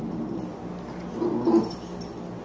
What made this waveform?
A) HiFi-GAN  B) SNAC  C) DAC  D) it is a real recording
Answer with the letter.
D